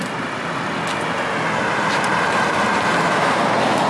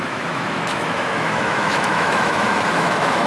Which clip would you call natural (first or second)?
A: first